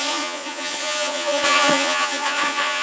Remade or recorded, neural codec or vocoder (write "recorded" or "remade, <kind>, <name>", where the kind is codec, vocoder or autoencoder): remade, vocoder, Vocos